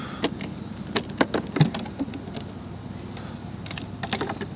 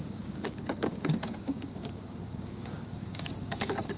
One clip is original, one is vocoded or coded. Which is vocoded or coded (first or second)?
second